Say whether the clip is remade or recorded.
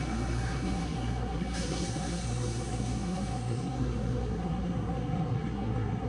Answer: remade